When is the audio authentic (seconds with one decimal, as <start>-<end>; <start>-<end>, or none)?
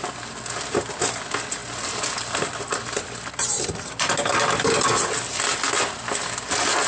0.0-6.9